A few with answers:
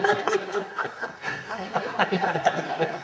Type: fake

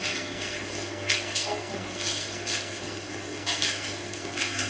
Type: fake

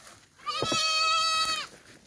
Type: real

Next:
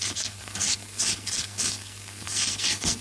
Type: fake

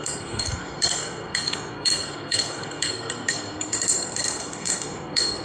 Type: fake